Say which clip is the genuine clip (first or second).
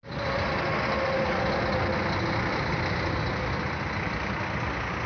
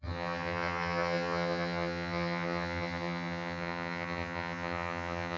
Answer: first